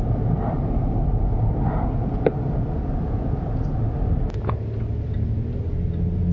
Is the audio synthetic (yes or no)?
no